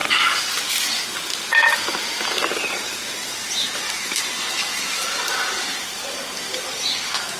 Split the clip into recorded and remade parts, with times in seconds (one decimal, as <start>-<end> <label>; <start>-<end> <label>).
0.0-7.4 recorded